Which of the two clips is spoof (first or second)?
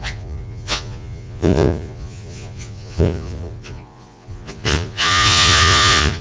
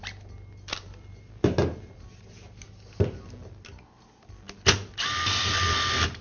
first